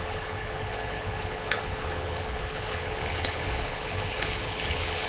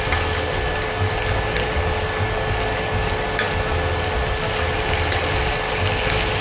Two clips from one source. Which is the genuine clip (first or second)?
second